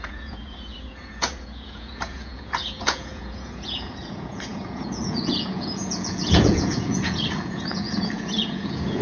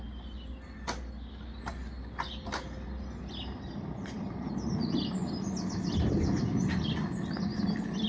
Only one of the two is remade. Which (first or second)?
first